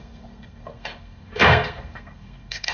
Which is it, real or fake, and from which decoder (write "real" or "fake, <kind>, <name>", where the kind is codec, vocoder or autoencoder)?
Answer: fake, codec, SNAC